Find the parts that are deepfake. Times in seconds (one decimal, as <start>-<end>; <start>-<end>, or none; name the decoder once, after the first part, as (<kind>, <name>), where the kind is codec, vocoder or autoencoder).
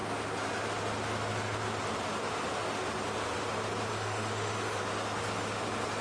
3.9-4.8 (autoencoder, DAC-VAE)